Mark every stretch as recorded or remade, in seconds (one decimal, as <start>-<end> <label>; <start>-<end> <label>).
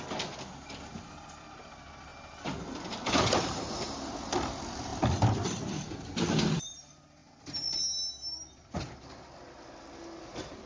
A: 0.0-2.1 remade; 2.1-4.3 recorded; 4.3-7.2 remade; 7.2-10.2 recorded; 10.2-10.7 remade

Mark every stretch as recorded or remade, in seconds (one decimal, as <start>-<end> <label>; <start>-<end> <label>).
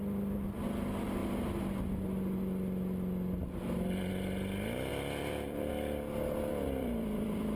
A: 0.0-4.9 recorded; 4.9-5.7 remade; 5.7-6.5 recorded; 6.5-7.6 remade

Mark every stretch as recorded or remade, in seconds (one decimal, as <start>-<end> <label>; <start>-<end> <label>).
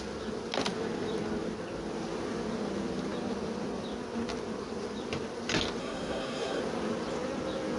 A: 0.0-5.8 recorded; 5.8-6.6 remade; 6.6-7.8 recorded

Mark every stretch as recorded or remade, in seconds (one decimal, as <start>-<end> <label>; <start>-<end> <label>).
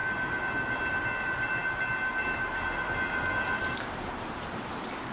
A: 0.0-5.1 recorded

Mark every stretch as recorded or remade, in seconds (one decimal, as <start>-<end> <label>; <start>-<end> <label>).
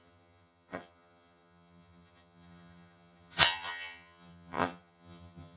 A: 0.0-5.6 remade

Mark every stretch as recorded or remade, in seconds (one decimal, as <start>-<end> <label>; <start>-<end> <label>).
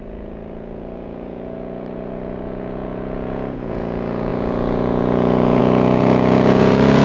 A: 0.0-7.0 remade